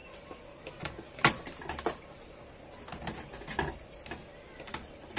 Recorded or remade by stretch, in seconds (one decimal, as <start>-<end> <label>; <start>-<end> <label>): 0.0-2.5 remade; 2.5-4.3 recorded; 4.3-5.2 remade